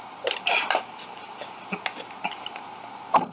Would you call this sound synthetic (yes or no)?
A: no